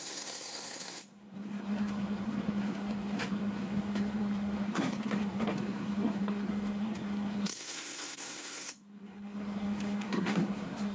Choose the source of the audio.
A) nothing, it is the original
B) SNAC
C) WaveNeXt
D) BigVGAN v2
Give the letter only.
B